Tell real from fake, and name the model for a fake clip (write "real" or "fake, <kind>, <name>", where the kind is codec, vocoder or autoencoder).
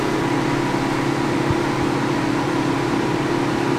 real